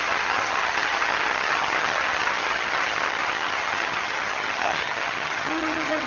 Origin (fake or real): fake